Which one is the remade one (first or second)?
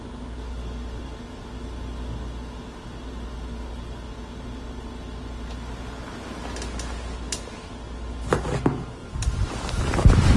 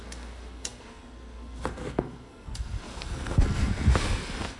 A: second